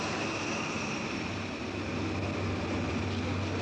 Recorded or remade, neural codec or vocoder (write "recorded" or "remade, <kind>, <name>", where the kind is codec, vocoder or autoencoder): recorded